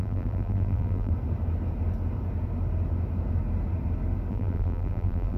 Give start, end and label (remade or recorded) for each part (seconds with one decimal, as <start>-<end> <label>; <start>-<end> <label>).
0.0-1.1 remade; 1.1-4.3 recorded; 4.3-5.4 remade